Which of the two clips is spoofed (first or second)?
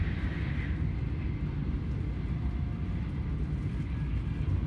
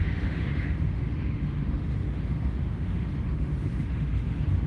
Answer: second